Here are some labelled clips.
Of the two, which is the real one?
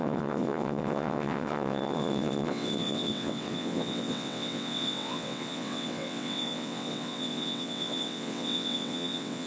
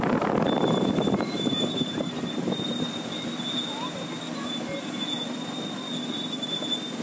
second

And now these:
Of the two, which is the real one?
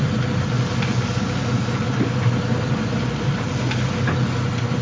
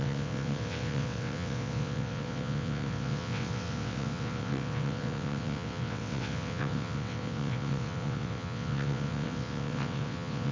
first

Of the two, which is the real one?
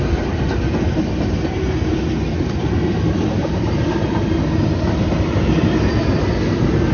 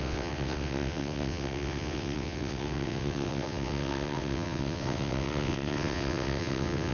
first